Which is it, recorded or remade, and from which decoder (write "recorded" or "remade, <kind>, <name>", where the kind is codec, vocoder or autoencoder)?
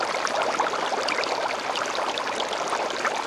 recorded